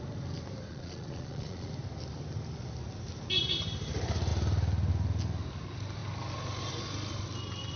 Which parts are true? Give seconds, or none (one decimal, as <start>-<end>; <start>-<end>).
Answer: 0.0-0.7; 1.7-7.8